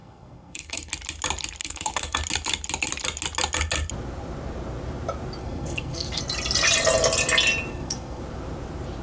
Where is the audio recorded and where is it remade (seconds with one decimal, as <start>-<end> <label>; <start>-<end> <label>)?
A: 0.0-0.9 remade; 0.9-1.6 recorded; 1.6-2.2 remade; 2.2-5.4 recorded; 5.4-6.2 remade; 6.2-7.7 recorded; 7.7-8.2 remade; 8.2-9.0 recorded